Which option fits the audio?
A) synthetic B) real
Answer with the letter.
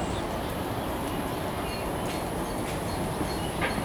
B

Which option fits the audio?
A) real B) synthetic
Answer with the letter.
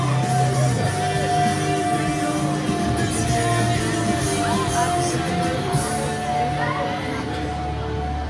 A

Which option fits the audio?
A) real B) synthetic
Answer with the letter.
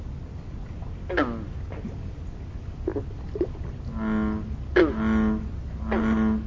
A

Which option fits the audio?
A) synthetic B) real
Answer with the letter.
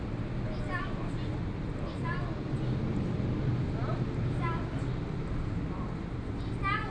B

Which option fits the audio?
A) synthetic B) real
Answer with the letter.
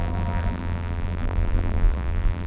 A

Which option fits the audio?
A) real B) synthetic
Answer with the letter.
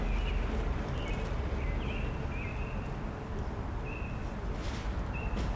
A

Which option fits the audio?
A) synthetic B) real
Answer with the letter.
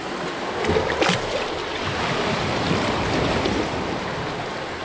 B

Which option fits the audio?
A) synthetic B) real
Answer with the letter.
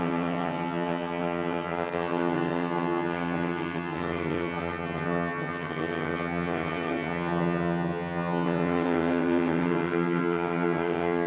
A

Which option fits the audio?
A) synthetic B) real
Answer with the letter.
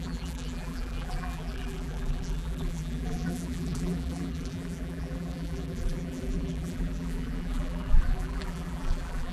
A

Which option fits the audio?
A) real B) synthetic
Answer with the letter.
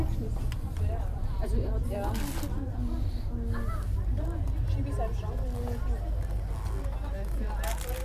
A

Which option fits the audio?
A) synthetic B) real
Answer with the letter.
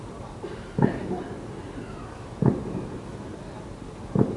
B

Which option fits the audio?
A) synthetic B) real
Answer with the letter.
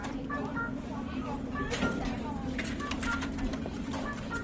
A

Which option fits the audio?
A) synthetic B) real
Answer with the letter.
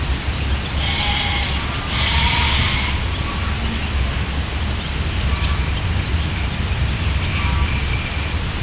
B